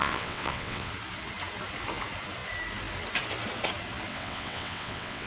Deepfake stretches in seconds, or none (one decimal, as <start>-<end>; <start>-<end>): 0.0-0.9; 4.1-5.3